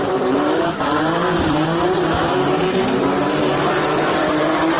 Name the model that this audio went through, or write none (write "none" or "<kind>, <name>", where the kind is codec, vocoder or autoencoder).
vocoder, BigVGAN v2